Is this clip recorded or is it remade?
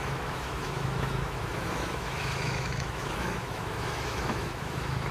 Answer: remade